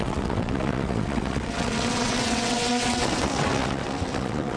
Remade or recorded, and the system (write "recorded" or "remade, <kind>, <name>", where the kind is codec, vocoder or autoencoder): remade, vocoder, WaveNeXt